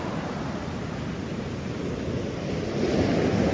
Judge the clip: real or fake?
real